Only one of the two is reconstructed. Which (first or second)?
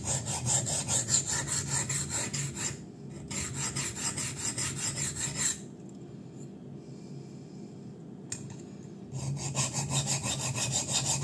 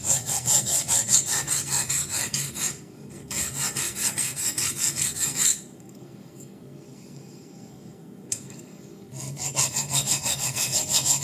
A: second